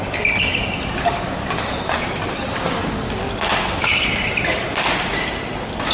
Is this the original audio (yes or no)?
yes